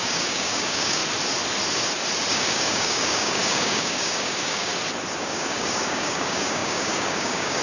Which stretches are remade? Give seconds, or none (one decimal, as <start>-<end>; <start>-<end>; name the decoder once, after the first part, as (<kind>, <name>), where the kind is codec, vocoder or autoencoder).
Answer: 0.0-1.0 (codec, DAC); 2.3-4.7; 5.2-7.6

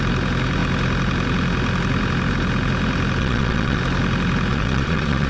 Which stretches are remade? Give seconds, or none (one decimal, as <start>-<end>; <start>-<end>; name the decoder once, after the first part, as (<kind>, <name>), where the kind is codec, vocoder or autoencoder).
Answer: 3.2-3.8 (vocoder, Vocos); 4.5-5.3

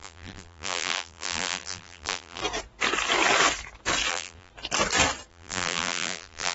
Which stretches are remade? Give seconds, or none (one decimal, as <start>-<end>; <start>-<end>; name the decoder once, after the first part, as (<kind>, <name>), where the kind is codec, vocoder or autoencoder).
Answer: 0.0-2.4 (vocoder, BigVGAN v2); 4.1-4.5; 5.3-6.5

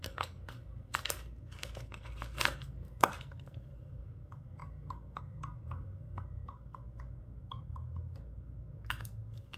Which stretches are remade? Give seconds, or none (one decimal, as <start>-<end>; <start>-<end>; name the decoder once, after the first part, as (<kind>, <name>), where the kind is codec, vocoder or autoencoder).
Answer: 0.0-9.6 (codec, SNAC)

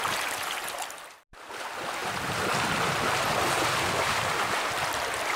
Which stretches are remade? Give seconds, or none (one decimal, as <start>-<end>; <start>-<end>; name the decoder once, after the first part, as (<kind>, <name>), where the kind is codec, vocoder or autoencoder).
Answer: none

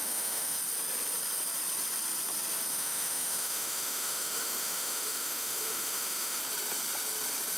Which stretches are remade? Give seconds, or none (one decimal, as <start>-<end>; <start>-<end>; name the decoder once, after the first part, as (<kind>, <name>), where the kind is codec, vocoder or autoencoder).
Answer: 0.0-0.6 (autoencoder, DAC-VAE); 2.7-6.4